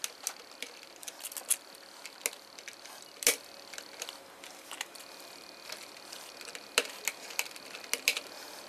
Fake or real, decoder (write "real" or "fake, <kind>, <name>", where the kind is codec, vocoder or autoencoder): real